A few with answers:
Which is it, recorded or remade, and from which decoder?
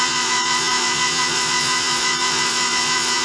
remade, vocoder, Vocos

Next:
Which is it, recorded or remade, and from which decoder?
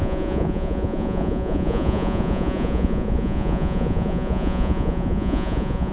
remade, vocoder, Vocos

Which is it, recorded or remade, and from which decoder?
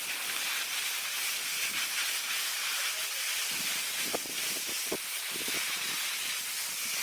recorded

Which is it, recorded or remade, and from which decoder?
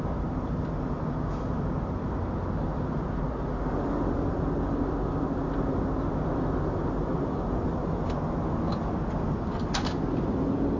recorded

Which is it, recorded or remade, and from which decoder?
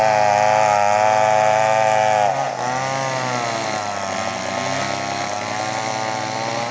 recorded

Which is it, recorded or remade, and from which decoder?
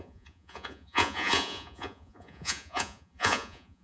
remade, vocoder, Vocos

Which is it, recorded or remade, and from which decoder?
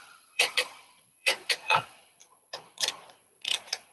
remade, vocoder, Vocos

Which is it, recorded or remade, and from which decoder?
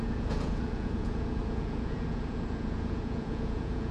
remade, vocoder, Vocos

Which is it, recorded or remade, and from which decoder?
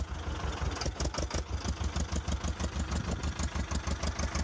recorded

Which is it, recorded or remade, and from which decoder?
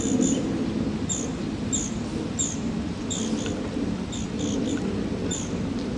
recorded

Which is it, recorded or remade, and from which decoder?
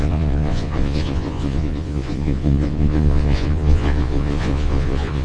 remade, vocoder, Vocos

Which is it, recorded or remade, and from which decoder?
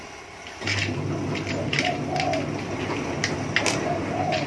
recorded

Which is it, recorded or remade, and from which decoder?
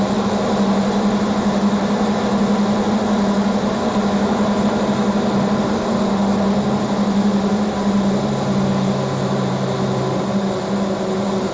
recorded